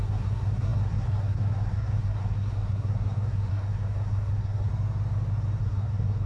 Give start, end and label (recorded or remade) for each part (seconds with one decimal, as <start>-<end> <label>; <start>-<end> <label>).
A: 0.0-4.7 remade; 4.7-5.6 recorded; 5.6-6.3 remade